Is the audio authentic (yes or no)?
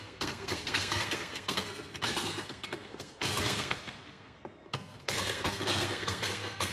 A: no